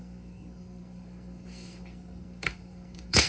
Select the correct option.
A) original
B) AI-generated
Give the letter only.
B